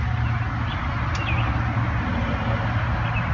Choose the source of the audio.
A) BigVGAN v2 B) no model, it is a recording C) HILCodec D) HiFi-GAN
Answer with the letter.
B